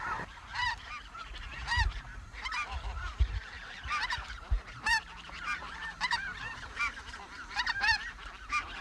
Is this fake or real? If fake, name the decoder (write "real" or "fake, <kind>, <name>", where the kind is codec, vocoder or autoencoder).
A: fake, vocoder, BigVGAN v2